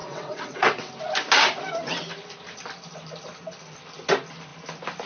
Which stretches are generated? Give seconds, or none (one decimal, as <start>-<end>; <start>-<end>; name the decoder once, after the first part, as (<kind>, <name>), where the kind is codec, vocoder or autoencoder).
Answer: 0.0-0.9 (vocoder, WaveNeXt)